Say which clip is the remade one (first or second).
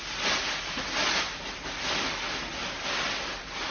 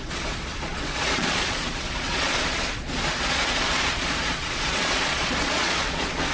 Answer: second